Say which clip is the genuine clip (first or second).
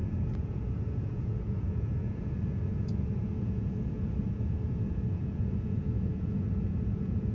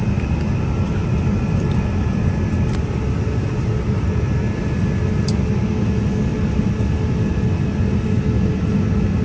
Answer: second